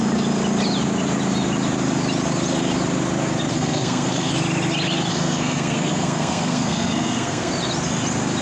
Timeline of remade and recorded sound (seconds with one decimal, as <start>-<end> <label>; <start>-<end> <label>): 0.0-3.5 recorded; 3.5-4.3 remade; 4.3-5.1 recorded; 5.1-7.5 remade; 7.5-8.4 recorded